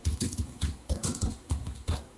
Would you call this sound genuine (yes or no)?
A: no